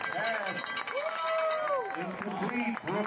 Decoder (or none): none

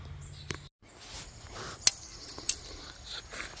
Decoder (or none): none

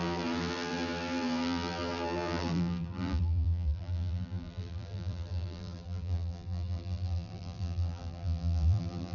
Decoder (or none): vocoder, BigVGAN v2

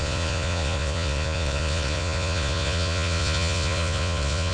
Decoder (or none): vocoder, Vocos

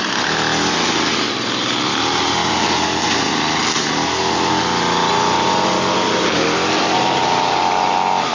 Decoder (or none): none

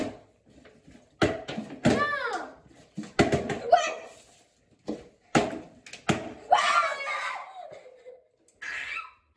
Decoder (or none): none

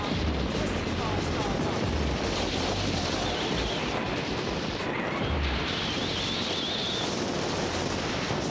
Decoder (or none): none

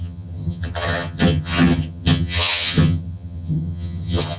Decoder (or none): vocoder, HiFi-GAN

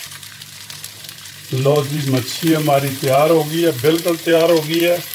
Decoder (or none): vocoder, BigVGAN v2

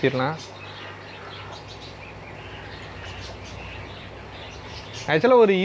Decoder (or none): none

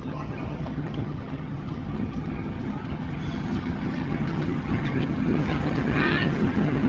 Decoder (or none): vocoder, HiFi-GAN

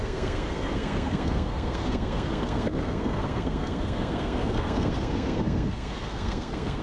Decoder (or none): codec, SNAC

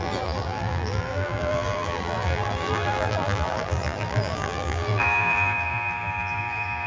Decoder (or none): vocoder, BigVGAN v2